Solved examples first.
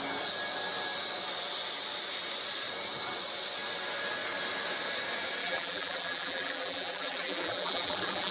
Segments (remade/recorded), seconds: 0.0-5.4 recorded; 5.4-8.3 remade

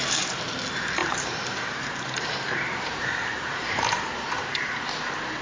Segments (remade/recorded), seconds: 0.0-1.0 recorded; 1.0-4.2 remade; 4.2-5.4 recorded

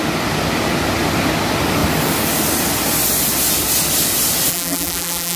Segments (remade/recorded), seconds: 0.0-4.5 recorded; 4.5-5.4 remade

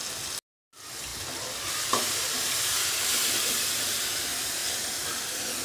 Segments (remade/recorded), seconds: 0.0-5.6 recorded